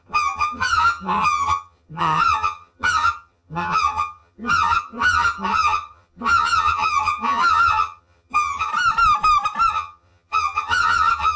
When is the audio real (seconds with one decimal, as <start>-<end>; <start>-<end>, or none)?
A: 8.7-9.7